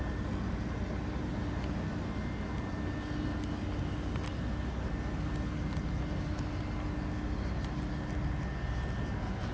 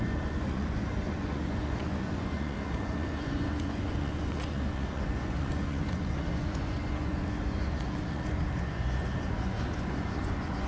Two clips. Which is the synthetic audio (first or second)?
second